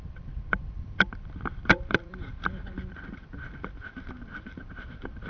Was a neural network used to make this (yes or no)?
yes